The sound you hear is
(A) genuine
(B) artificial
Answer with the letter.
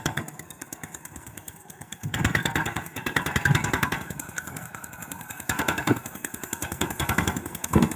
B